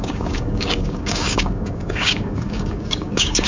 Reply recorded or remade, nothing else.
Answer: remade